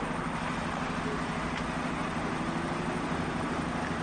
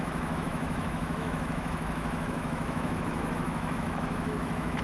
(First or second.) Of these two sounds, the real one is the first